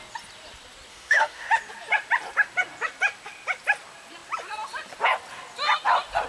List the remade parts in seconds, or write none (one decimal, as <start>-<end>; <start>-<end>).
0.9-1.6